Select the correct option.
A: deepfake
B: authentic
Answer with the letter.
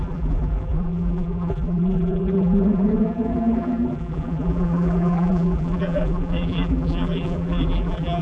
A